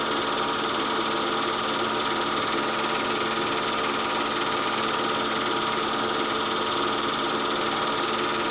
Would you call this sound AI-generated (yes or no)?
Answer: no